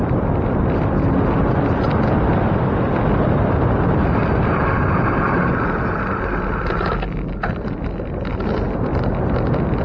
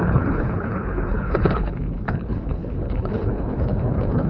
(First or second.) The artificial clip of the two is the second